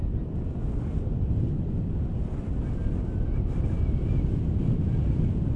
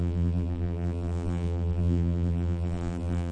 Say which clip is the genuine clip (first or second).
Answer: first